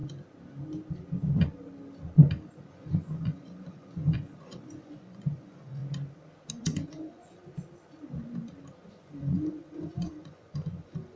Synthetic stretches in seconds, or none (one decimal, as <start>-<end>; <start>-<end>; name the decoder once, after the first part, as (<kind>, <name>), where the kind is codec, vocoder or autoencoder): 2.7-5.8 (vocoder, Vocos); 6.5-7.4; 8.9-11.2